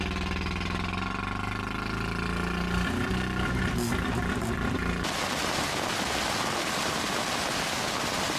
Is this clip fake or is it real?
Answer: real